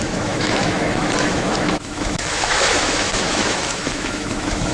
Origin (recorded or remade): remade